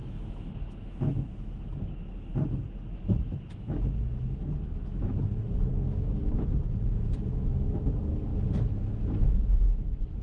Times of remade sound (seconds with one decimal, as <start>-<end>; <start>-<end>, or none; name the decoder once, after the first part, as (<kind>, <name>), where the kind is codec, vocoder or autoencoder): 0.0-2.3 (autoencoder, DAC-VAE); 2.9-8.3; 9.6-10.2